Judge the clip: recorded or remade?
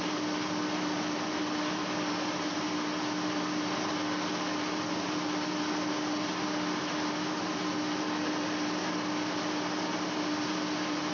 recorded